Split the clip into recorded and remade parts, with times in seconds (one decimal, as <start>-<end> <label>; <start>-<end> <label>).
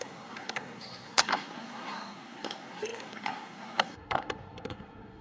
0.0-5.2 remade